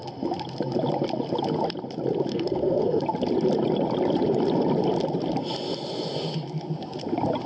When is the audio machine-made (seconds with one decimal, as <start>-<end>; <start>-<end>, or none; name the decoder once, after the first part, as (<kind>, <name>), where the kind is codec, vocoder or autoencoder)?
2.3-3.0 (codec, SNAC)